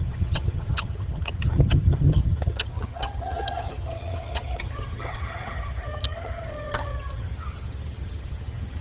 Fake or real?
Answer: fake